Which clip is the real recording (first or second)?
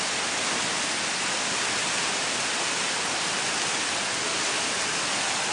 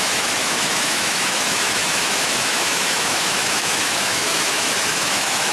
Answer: first